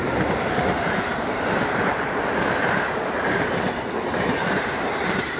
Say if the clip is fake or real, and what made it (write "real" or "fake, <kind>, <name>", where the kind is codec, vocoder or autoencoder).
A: fake, vocoder, BigVGAN v2